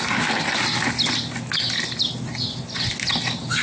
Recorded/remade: recorded